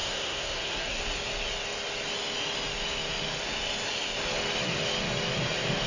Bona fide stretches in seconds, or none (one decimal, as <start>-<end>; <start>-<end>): 1.0-5.9